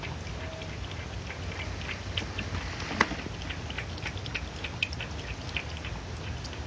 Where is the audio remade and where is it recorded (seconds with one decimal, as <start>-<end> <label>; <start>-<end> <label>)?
0.0-6.7 recorded

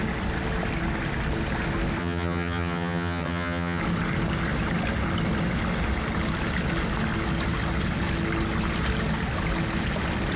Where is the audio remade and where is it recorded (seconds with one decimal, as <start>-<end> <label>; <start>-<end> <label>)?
0.0-2.0 recorded; 2.0-3.8 remade; 3.8-10.4 recorded

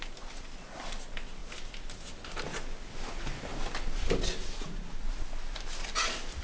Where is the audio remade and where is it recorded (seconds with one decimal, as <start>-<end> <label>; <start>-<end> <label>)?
0.0-6.4 recorded

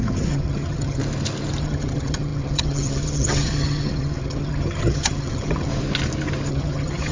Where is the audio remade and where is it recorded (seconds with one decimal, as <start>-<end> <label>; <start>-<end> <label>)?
0.0-1.0 remade; 1.0-1.6 recorded; 1.6-5.7 remade; 5.7-6.5 recorded; 6.5-7.1 remade

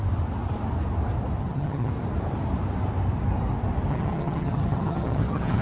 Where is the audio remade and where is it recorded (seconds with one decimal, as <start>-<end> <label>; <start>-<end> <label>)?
0.0-1.4 recorded; 1.4-1.9 remade; 1.9-3.9 recorded; 3.9-5.6 remade

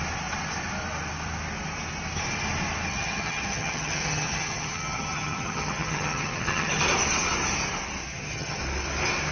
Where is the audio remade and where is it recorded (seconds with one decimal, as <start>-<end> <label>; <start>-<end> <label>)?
0.0-2.9 recorded; 2.9-6.7 remade; 6.7-8.1 recorded; 8.1-8.6 remade; 8.6-9.3 recorded

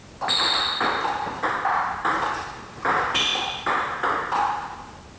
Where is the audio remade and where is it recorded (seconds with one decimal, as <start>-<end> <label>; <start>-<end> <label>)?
0.0-5.2 recorded

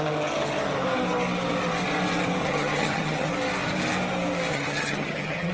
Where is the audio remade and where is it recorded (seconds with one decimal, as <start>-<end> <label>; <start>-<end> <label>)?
0.0-2.4 recorded; 2.4-3.3 remade; 3.3-4.5 recorded; 4.5-5.5 remade